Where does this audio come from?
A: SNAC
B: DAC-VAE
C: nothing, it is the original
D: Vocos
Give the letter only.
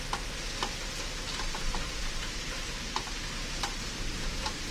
C